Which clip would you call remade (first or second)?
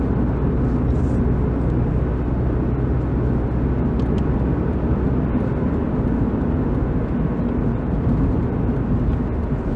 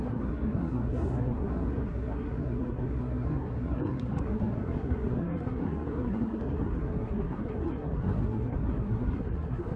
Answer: second